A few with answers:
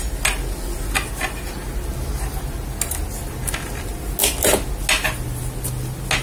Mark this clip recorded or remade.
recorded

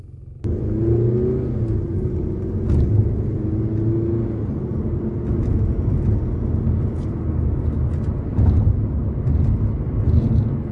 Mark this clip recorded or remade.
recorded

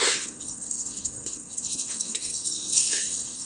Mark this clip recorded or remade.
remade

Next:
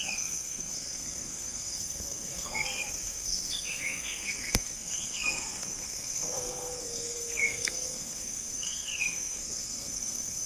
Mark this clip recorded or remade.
remade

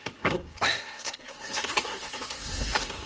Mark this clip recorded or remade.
remade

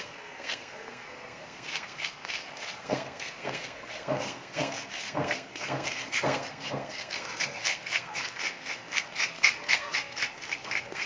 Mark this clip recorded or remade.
remade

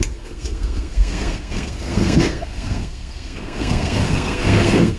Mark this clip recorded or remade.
remade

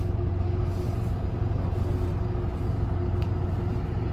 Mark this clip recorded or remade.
recorded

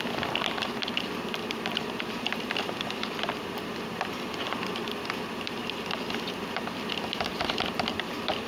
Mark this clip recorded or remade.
recorded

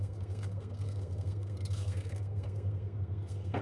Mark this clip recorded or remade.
remade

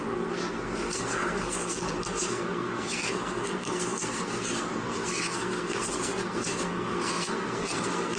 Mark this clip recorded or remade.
remade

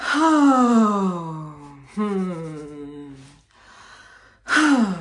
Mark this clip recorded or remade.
recorded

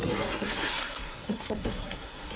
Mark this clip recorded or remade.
remade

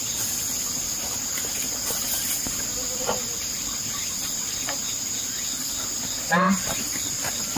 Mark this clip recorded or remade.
recorded